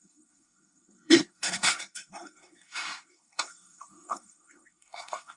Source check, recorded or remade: remade